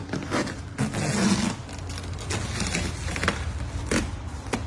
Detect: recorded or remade recorded